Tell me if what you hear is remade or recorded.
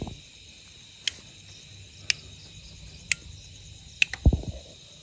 recorded